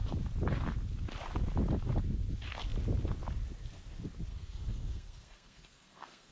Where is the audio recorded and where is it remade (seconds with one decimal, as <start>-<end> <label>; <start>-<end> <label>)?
0.0-4.3 recorded; 4.3-6.3 remade